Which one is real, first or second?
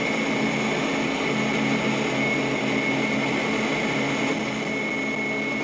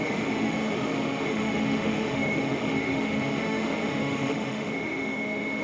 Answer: first